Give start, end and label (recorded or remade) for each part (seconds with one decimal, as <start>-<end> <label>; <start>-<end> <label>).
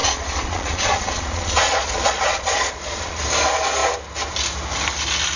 0.0-3.2 remade; 3.2-5.4 recorded